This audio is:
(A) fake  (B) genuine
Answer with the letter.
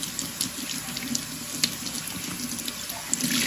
B